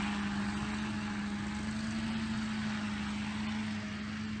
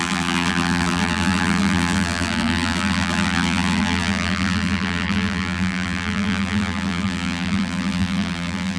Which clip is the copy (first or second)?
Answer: second